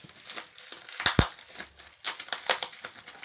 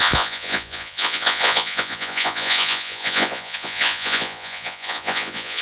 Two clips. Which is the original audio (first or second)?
first